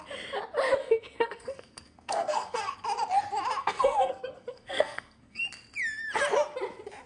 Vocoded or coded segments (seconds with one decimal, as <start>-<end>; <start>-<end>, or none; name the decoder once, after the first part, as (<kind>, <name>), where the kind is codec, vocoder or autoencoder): 0.8-2.7 (codec, SNAC); 3.6-5.4